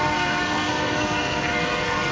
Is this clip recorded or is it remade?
remade